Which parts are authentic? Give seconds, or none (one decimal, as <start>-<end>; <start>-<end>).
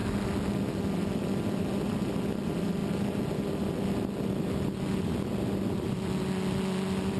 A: 0.0-7.2